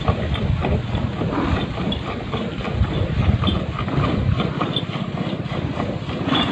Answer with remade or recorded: recorded